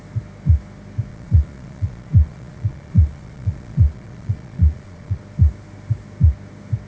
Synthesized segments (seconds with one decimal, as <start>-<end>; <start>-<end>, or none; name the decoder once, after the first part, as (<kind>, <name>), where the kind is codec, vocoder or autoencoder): 1.1-5.2 (vocoder, Vocos)